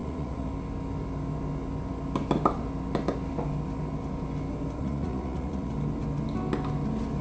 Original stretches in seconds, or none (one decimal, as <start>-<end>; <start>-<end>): 0.5-4.8; 5.7-7.2